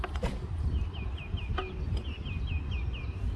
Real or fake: real